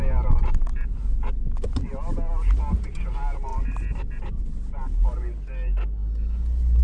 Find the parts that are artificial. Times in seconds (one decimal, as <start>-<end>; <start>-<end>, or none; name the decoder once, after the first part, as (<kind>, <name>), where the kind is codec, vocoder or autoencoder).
none